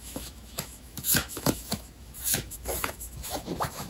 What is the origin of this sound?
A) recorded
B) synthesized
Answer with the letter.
B